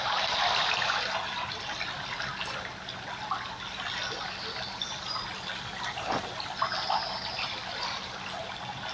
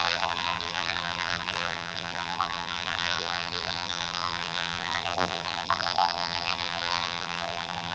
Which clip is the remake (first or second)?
second